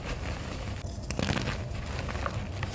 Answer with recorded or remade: recorded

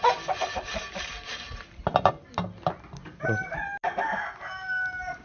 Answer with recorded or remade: recorded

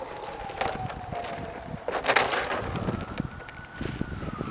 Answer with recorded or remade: recorded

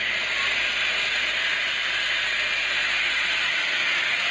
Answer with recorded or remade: recorded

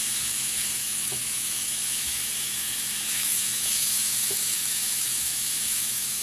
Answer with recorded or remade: remade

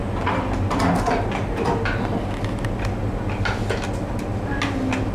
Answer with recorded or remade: recorded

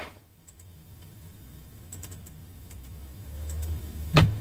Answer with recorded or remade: remade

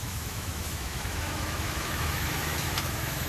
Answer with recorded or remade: remade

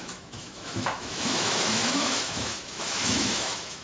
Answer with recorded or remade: remade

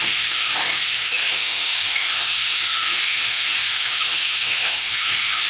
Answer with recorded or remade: remade